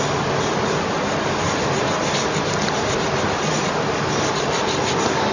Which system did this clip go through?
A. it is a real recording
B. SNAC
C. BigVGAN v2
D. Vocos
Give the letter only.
A